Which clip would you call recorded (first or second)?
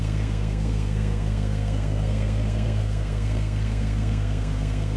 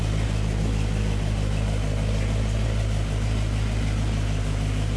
second